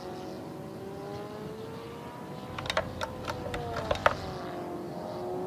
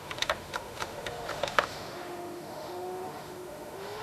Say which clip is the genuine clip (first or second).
first